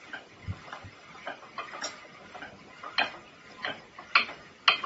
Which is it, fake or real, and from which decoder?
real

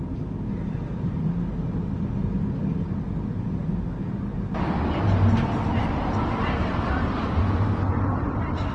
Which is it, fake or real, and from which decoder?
real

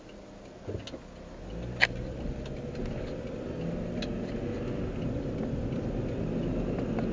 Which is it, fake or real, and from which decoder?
real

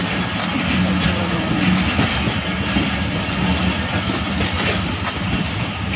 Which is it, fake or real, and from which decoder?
real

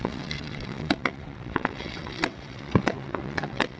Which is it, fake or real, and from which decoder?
fake, vocoder, WaveNeXt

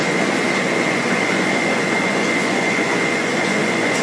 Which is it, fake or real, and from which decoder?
fake, vocoder, Vocos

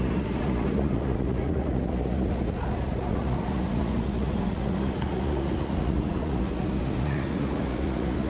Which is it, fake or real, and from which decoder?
fake, vocoder, Vocos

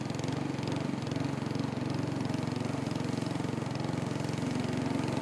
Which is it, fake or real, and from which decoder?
real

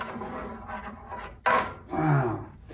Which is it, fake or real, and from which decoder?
real